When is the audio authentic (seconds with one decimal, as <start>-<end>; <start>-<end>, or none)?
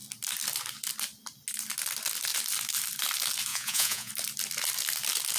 0.0-3.5; 4.1-5.4